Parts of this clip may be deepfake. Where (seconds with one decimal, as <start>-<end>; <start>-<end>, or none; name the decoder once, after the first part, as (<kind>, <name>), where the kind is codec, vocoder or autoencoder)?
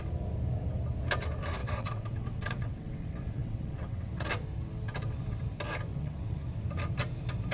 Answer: 1.6-4.3 (vocoder, WaveNeXt); 5.9-6.4